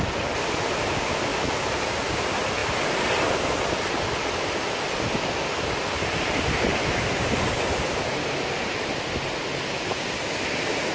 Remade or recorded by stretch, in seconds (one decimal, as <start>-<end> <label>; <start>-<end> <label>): 0.0-8.1 recorded; 8.1-8.7 remade; 8.7-10.9 recorded